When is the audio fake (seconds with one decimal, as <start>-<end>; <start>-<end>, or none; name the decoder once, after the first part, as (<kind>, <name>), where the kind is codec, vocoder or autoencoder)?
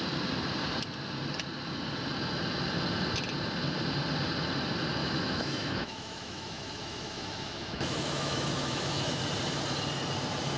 5.0-9.2 (autoencoder, DAC-VAE)